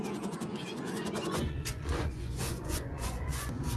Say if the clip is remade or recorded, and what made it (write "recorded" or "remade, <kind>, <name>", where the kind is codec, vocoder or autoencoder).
remade, vocoder, Vocos